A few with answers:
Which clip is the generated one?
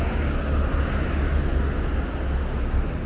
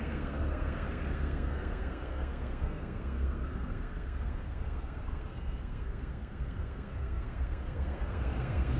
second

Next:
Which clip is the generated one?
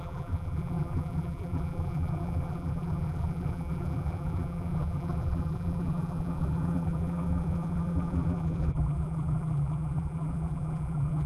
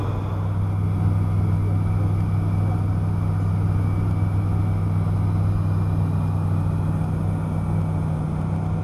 first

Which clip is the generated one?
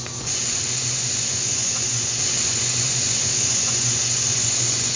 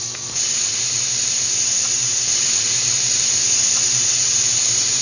first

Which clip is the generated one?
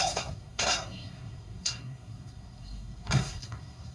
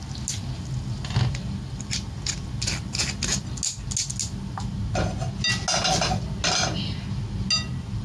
first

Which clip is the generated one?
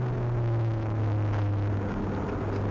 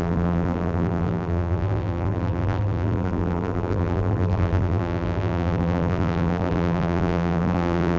second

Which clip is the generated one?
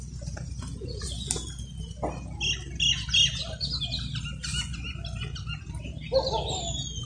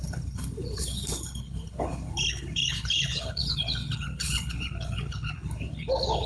second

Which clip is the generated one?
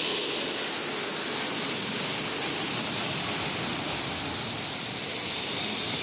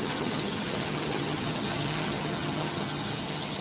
second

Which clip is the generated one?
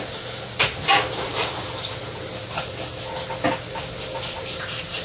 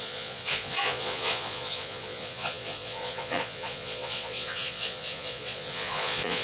second